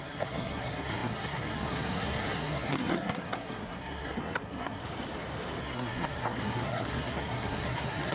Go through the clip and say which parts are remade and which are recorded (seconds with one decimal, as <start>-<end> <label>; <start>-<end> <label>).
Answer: 0.0-4.8 remade; 4.8-5.6 recorded; 5.6-8.1 remade